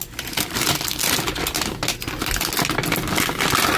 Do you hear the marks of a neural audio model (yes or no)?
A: no